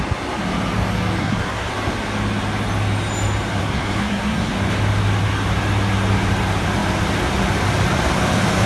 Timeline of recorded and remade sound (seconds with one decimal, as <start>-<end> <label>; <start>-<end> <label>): 0.0-1.2 recorded; 1.2-1.7 remade; 1.7-3.6 recorded; 3.6-4.5 remade; 4.5-8.7 recorded